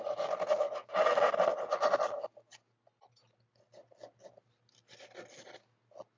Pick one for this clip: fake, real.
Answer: real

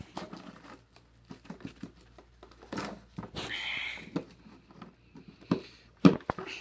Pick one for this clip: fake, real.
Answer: real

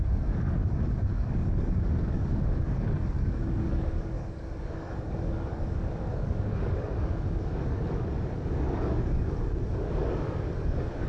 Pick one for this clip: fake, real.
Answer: fake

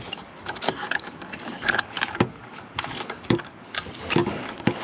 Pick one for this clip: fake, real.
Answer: fake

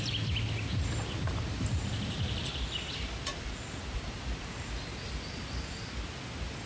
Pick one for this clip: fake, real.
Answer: real